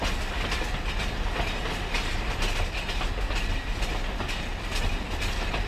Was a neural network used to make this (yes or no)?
no